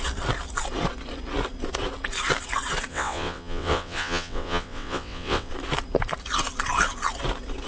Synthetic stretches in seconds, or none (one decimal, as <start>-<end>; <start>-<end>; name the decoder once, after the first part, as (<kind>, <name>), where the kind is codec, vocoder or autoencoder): 2.9-5.5 (vocoder, WaveNeXt)